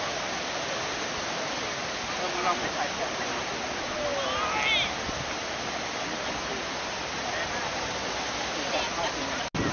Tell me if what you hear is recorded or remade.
recorded